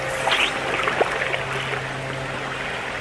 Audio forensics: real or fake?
real